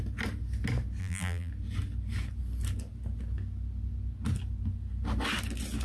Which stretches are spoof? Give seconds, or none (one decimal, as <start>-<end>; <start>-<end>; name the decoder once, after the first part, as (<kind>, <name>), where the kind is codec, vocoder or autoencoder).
1.0-1.5 (vocoder, BigVGAN v2)